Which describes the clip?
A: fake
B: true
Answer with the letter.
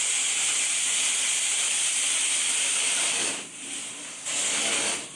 B